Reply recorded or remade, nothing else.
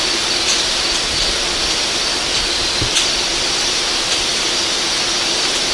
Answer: recorded